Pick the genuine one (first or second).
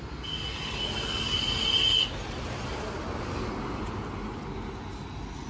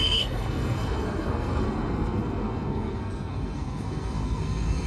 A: first